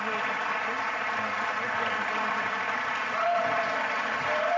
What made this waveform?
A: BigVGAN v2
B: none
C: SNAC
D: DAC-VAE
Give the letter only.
B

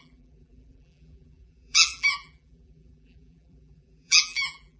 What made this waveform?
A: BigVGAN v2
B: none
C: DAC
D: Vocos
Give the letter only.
A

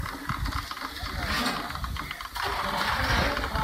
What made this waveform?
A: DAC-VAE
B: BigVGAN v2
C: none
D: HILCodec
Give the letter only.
C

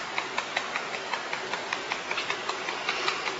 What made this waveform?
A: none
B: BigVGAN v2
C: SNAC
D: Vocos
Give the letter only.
A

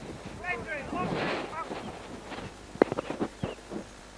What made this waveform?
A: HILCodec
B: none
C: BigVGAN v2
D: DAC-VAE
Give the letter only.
B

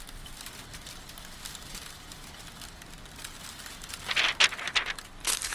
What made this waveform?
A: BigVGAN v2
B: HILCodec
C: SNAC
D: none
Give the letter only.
D